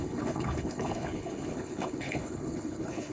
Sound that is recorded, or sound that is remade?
remade